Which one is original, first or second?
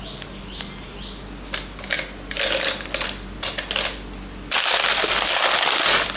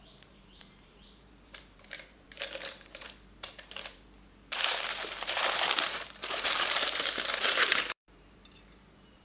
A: first